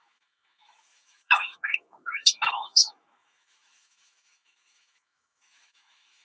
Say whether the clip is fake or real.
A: fake